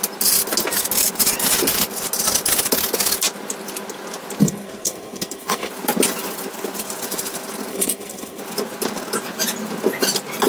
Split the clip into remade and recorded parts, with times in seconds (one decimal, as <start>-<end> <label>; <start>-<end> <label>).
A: 0.0-4.4 recorded; 4.4-5.7 remade; 5.7-7.7 recorded; 7.7-8.4 remade; 8.4-10.5 recorded